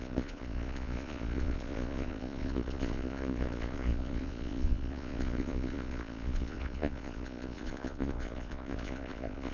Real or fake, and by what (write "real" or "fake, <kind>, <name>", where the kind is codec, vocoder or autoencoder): fake, vocoder, Vocos